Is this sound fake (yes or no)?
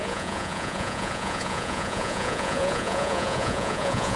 yes